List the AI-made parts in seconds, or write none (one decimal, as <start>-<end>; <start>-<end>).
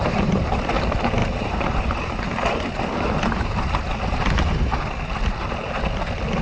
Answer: 0.0-0.5; 1.2-4.8